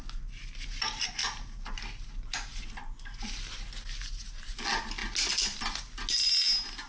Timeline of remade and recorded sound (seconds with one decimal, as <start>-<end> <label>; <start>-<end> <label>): 0.0-6.9 recorded